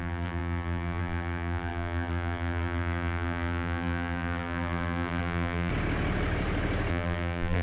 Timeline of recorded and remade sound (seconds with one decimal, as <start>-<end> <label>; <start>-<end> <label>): 0.0-5.7 remade; 5.7-6.9 recorded; 6.9-7.6 remade